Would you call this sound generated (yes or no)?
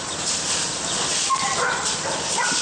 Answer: no